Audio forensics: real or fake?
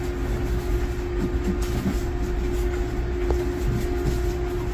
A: real